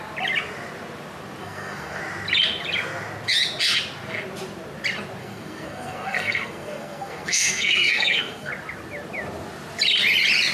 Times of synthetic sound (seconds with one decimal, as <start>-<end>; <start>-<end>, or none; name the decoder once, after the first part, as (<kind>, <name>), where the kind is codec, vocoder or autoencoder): 1.4-2.0 (codec, SNAC); 5.2-8.5